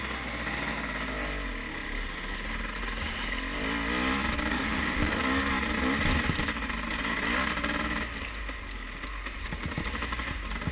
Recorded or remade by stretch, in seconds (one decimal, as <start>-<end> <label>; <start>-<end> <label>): 0.0-4.5 recorded; 4.5-5.2 remade; 5.2-10.7 recorded